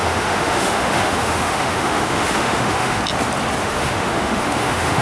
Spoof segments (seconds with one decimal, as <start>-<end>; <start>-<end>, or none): 0.0-3.0; 3.6-5.0